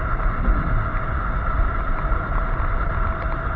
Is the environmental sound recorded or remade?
recorded